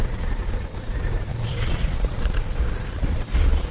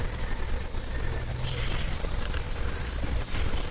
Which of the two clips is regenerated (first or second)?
first